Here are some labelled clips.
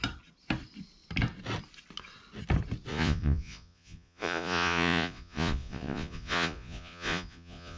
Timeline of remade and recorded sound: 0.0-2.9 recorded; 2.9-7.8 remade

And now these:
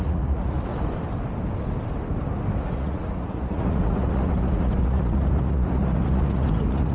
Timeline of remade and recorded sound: 0.0-0.7 remade; 0.7-2.6 recorded; 2.6-6.9 remade

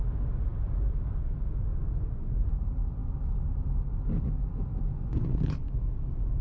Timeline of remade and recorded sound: 0.0-1.7 recorded; 1.7-2.5 remade; 2.5-4.9 recorded; 4.9-5.7 remade; 5.7-6.4 recorded

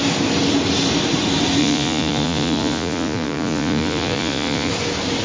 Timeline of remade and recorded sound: 0.0-1.6 recorded; 1.6-4.7 remade; 4.7-5.2 recorded

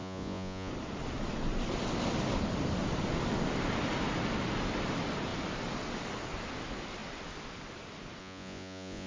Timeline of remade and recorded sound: 0.0-0.7 remade; 0.7-8.2 recorded; 8.2-9.1 remade

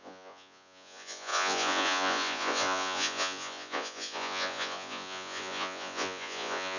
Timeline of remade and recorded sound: 0.0-6.8 remade